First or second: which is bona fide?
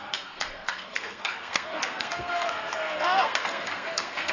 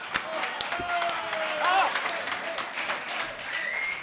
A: second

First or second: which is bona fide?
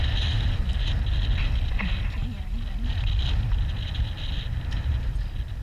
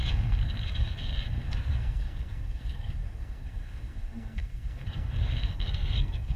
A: first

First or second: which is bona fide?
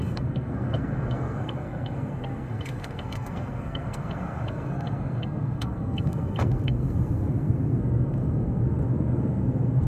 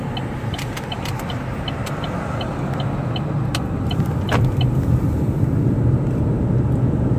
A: second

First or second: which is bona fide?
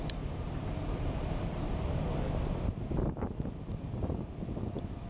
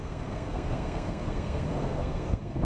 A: first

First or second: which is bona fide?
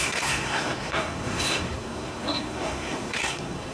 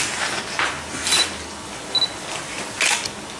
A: second